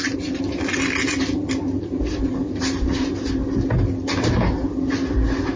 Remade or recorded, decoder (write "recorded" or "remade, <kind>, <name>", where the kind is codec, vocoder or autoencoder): recorded